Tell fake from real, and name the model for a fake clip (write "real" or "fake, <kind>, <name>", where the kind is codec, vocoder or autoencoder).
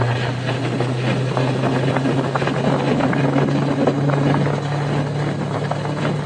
real